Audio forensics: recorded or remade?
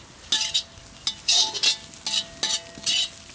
recorded